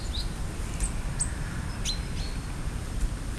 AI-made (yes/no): no